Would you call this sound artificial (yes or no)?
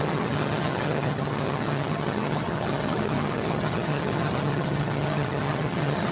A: yes